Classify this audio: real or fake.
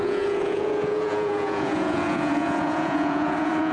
fake